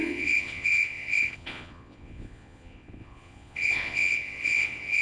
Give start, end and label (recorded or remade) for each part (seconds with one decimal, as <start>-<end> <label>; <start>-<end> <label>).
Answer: 0.0-5.0 remade